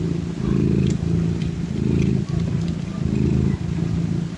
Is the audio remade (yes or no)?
no